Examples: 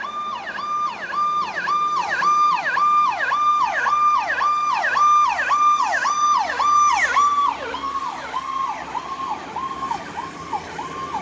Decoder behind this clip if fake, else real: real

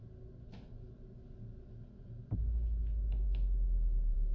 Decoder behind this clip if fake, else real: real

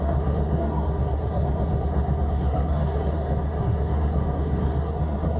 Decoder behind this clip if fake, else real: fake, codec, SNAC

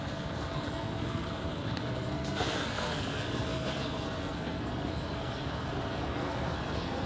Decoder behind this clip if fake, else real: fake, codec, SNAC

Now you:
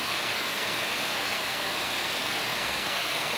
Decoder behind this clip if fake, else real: fake, codec, SNAC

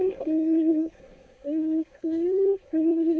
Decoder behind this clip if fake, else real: fake, codec, SNAC